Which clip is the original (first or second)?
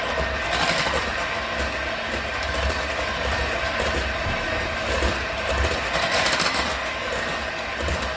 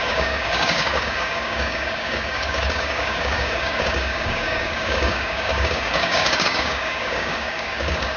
first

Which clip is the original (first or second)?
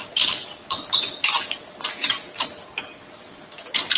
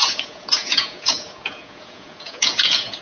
first